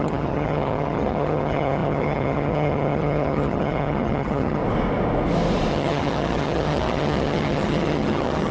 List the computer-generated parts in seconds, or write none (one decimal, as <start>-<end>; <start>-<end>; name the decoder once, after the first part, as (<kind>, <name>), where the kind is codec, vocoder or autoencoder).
0.0-4.6 (vocoder, HiFi-GAN); 5.7-8.5